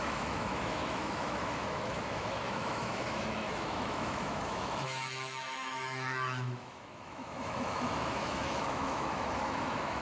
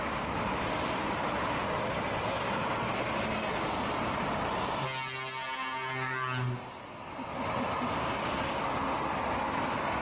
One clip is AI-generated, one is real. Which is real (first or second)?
second